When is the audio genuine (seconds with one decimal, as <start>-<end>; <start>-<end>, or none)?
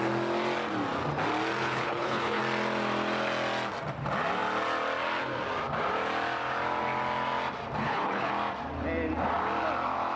0.0-1.6; 2.4-7.8; 8.3-10.2